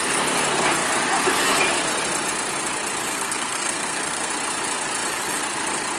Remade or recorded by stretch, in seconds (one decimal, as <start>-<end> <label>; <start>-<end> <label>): 0.0-3.1 recorded; 3.1-4.3 remade; 4.3-6.0 recorded